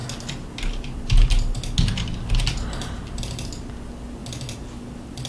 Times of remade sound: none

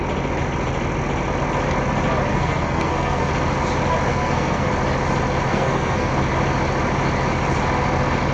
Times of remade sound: 2.3-3.3 (codec, SNAC); 4.1-4.7; 5.5-6.1

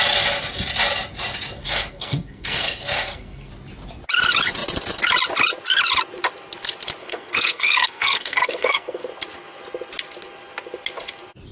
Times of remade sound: 1.6-3.5 (codec, SNAC); 7.0-9.1

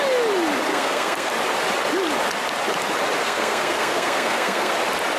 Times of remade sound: 0.7-1.3 (codec, SNAC); 3.2-4.7

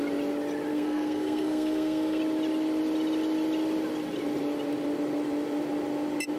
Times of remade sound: 0.7-2.2 (codec, SNAC)

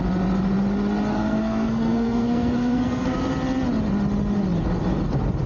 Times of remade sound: 1.1-3.2 (codec, SNAC)